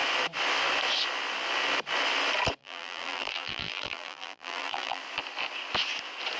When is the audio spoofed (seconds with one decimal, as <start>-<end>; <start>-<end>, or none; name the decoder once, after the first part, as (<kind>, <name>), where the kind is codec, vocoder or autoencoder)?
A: 2.6-5.0 (vocoder, BigVGAN v2)